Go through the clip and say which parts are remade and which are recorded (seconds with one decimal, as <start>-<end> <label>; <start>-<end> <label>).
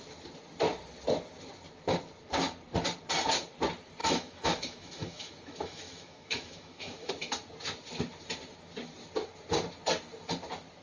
0.0-4.0 recorded; 4.0-7.1 remade; 7.1-10.8 recorded